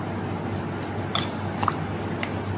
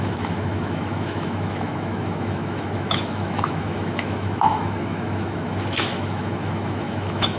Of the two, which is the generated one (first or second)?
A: second